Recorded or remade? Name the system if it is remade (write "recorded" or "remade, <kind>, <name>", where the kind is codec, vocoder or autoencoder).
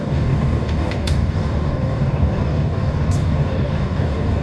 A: remade, codec, DAC